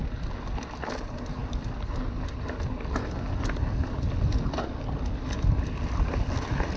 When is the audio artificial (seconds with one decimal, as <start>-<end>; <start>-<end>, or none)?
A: none